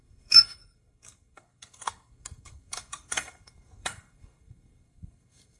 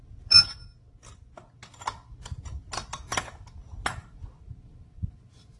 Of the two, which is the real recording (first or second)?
second